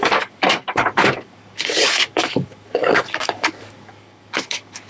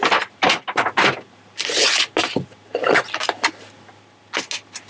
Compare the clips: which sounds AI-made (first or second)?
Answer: first